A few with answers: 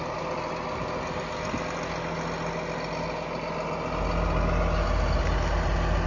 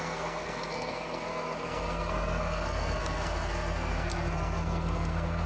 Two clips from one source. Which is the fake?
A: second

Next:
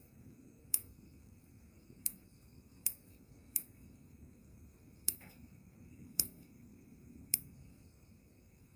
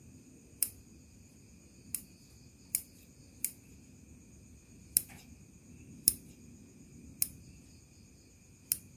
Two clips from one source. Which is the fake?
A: first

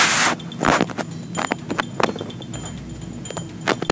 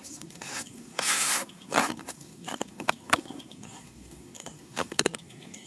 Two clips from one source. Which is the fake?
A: second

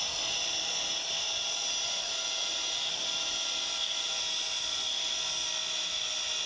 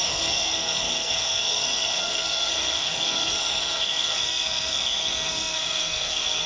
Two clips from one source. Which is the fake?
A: second